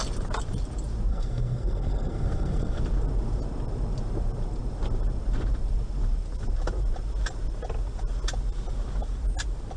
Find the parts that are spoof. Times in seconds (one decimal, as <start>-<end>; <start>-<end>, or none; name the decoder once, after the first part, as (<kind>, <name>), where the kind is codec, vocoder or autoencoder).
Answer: 1.1-2.8 (codec, SNAC)